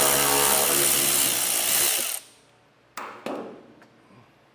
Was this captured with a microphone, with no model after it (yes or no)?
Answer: yes